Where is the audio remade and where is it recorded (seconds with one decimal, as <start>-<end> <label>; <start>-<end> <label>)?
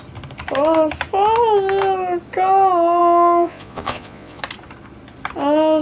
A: 0.0-3.0 recorded; 3.0-4.4 remade; 4.4-5.8 recorded